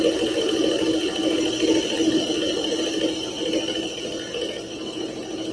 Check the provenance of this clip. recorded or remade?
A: recorded